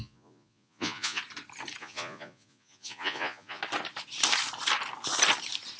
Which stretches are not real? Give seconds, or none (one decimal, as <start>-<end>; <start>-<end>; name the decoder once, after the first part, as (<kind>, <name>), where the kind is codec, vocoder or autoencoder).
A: 0.0-1.2 (vocoder, Vocos); 1.8-3.6